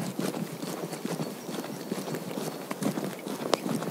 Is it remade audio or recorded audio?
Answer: recorded